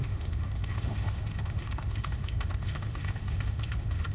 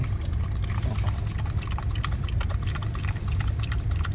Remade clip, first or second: first